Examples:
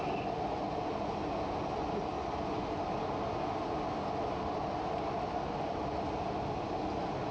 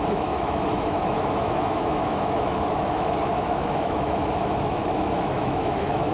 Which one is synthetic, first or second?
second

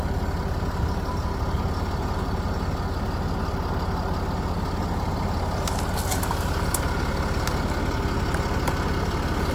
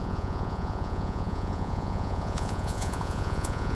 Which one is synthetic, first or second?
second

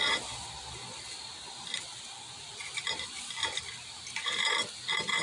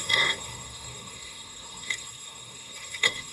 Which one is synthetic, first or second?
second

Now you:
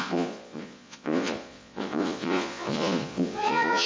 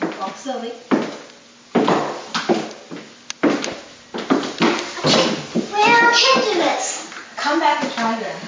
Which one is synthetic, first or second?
first